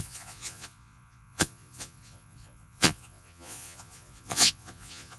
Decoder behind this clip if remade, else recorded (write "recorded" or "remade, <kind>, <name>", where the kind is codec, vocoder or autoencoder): remade, vocoder, Vocos